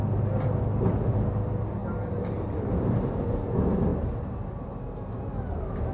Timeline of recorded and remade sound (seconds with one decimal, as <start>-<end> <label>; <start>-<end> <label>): 0.0-1.8 recorded; 1.8-3.2 remade; 3.2-5.9 recorded